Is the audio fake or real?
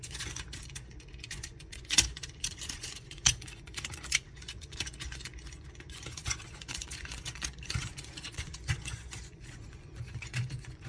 fake